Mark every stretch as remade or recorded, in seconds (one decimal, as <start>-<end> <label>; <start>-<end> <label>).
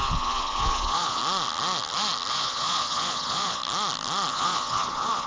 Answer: 0.0-1.2 remade; 1.2-2.3 recorded; 2.3-3.6 remade; 3.6-4.3 recorded; 4.3-5.3 remade